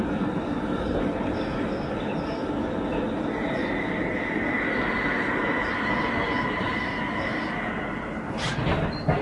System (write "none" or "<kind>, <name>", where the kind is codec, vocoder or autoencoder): none